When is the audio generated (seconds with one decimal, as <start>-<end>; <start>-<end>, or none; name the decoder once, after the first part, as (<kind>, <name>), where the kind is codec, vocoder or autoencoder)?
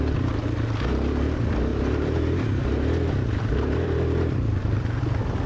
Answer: 1.7-5.0 (vocoder, BigVGAN v2)